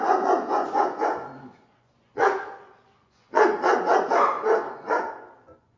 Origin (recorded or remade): remade